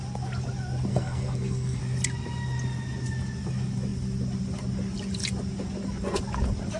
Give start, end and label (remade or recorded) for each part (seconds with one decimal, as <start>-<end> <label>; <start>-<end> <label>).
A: 0.0-0.9 recorded; 0.9-1.8 remade; 1.8-6.8 recorded